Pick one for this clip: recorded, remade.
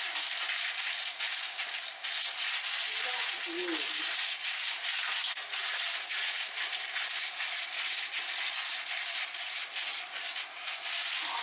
recorded